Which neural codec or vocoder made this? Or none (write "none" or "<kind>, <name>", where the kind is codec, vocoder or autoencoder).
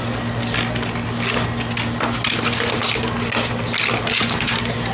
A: none